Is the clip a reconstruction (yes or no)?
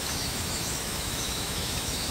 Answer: yes